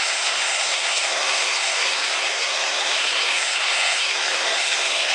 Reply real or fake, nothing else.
fake